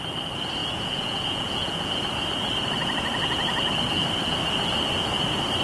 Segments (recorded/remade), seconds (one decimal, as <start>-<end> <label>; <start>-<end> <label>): 0.0-0.6 recorded; 0.6-1.9 remade; 1.9-5.6 recorded